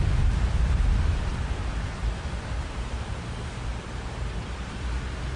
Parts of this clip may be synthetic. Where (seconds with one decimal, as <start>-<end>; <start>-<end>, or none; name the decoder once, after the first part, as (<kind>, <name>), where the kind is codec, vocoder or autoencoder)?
2.6-4.9 (vocoder, BigVGAN v2)